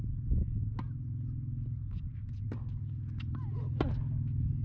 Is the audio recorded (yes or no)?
yes